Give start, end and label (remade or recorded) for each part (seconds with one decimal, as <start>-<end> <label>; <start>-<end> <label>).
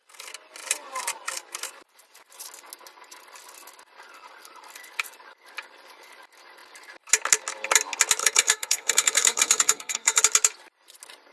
0.0-8.2 recorded; 8.2-10.2 remade; 10.2-11.3 recorded